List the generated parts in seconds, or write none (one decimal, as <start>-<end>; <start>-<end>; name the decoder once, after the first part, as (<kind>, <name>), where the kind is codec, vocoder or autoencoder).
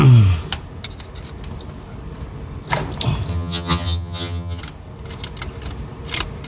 3.3-4.6 (vocoder, HiFi-GAN)